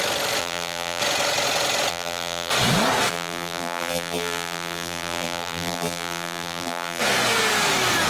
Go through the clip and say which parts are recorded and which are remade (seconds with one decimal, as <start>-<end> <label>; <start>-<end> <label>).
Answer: 0.0-0.4 recorded; 0.4-1.0 remade; 1.0-1.9 recorded; 1.9-2.5 remade; 2.5-3.1 recorded; 3.1-7.0 remade; 7.0-8.1 recorded